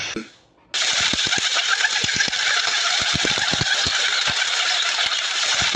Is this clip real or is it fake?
real